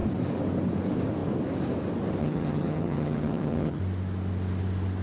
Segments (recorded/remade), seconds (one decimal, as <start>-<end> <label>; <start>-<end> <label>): 0.0-2.2 recorded; 2.2-3.8 remade; 3.8-5.0 recorded